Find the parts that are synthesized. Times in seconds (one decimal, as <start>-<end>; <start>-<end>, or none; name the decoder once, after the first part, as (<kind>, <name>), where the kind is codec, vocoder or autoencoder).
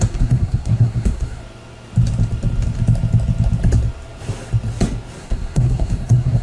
0.0-1.4 (codec, SNAC); 5.2-6.4